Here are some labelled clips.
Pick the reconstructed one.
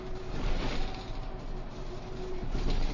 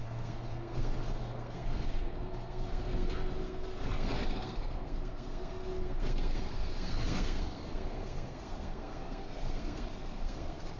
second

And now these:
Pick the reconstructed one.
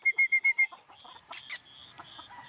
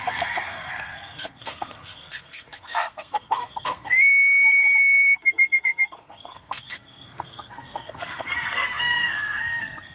second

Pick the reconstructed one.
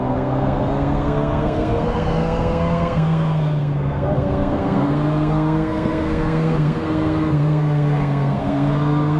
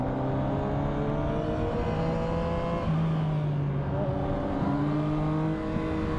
first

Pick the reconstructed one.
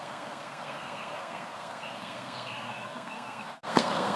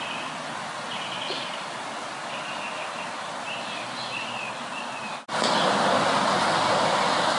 first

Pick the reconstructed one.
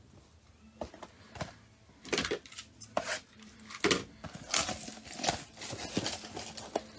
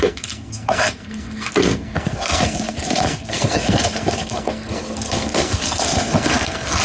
second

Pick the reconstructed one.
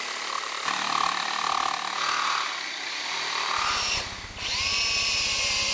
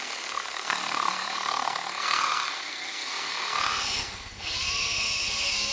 second